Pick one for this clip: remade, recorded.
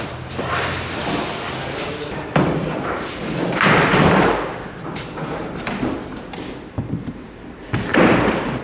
remade